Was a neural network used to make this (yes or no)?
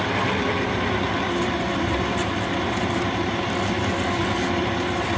no